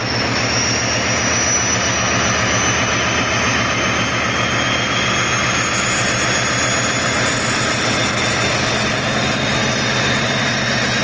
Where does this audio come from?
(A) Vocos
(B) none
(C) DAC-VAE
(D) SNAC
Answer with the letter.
B